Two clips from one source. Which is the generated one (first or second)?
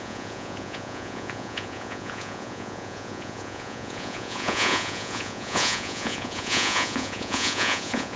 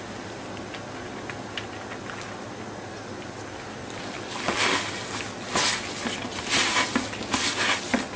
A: first